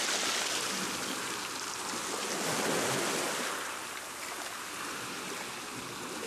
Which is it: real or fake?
real